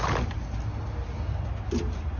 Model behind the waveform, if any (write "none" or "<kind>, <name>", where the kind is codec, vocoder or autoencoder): none